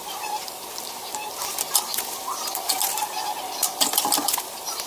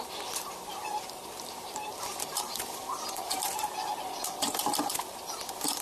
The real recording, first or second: first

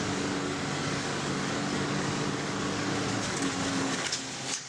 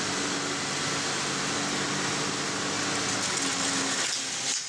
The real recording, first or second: second